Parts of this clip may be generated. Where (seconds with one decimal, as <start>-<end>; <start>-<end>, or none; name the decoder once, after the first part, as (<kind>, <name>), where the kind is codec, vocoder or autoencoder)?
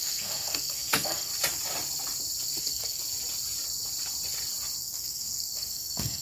0.0-1.3 (codec, SNAC); 2.6-3.0; 4.8-6.2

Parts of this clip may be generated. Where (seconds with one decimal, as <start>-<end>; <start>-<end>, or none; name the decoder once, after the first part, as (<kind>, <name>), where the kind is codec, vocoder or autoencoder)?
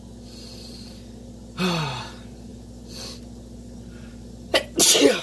none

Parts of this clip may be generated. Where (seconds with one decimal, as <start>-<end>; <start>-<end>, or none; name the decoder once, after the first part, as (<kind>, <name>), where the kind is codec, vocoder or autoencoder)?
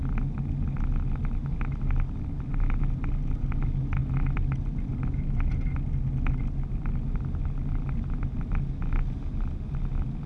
none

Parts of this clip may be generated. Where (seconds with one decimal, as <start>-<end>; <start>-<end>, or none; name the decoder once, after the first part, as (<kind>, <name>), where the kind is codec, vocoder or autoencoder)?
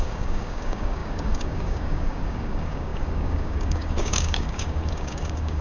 0.0-5.6 (codec, DAC)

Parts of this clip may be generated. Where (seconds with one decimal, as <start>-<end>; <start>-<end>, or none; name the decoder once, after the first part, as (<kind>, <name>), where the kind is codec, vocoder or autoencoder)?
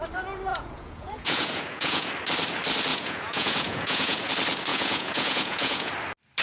0.5-2.1 (vocoder, Vocos); 2.9-4.3; 4.7-5.9